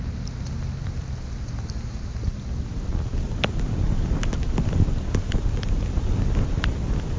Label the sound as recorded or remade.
recorded